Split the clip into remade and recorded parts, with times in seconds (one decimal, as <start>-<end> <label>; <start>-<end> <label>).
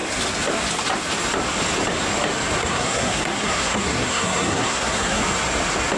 0.0-2.6 recorded; 2.6-5.2 remade; 5.2-6.0 recorded